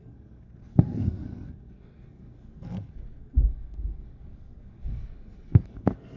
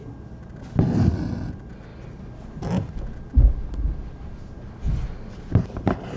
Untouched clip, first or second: second